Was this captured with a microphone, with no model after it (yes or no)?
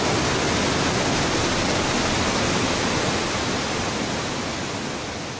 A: yes